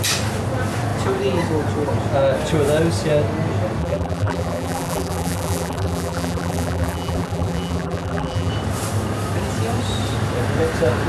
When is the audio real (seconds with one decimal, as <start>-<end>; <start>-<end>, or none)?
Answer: 0.0-3.8; 8.5-11.1